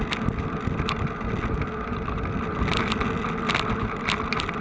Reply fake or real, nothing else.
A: real